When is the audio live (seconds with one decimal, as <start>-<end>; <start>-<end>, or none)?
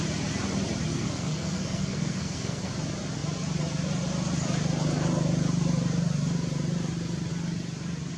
0.0-0.9; 2.7-8.2